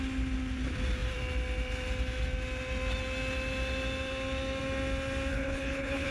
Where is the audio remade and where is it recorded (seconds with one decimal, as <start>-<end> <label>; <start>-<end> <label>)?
0.0-5.3 recorded; 5.3-6.1 remade